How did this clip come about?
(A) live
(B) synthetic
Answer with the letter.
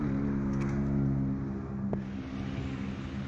A